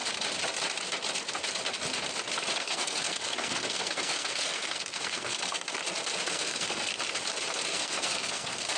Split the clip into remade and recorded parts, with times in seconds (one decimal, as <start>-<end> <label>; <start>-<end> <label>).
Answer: 0.0-2.6 recorded; 2.6-5.8 remade; 5.8-6.3 recorded; 6.3-6.9 remade; 6.9-7.6 recorded; 7.6-8.8 remade